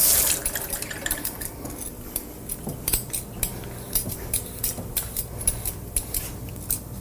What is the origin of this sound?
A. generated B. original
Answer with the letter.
B